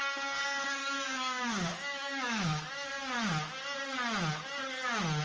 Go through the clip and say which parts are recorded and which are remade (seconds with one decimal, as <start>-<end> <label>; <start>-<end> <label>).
0.0-0.8 recorded; 0.8-2.7 remade; 2.7-5.2 recorded